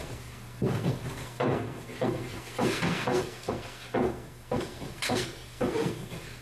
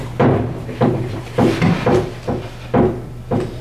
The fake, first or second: first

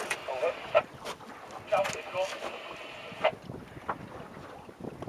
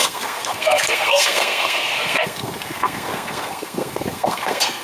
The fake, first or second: second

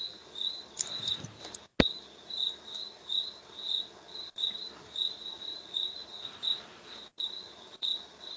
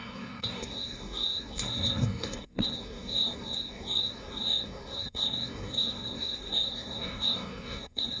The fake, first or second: second